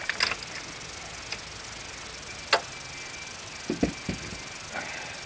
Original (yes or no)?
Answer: yes